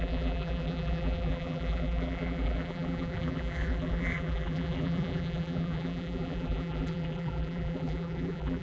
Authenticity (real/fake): fake